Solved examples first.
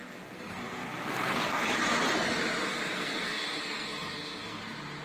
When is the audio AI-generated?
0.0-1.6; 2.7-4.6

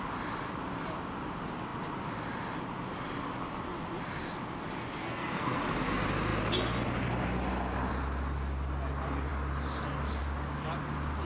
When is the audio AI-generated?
5.0-5.6

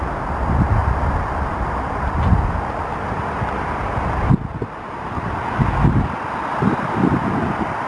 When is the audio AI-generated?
none